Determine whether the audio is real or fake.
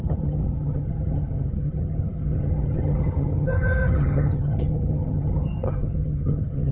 fake